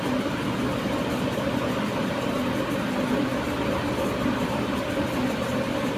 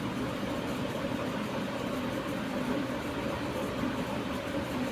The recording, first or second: first